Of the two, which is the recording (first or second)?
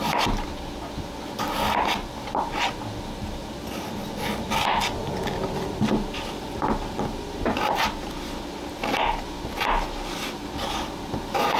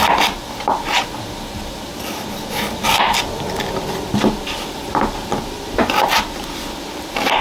first